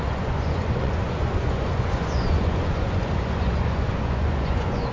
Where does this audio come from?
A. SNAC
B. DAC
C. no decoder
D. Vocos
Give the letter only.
D